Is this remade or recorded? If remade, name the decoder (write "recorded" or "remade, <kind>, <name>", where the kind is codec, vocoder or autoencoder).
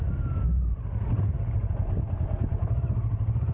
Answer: recorded